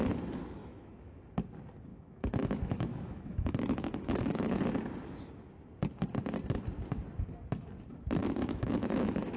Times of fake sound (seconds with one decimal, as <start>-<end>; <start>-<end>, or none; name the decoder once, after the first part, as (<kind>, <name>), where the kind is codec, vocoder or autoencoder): 0.6-1.2 (autoencoder, DAC-VAE); 1.9-4.6; 8.2-9.4